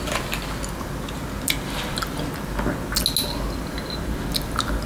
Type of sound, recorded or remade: recorded